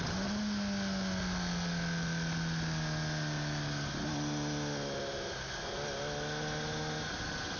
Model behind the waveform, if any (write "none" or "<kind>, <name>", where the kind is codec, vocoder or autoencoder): none